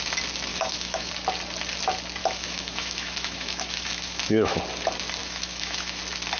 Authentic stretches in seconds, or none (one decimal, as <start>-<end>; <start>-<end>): 0.0-0.5; 1.1-2.2; 4.6-5.2; 6.0-6.4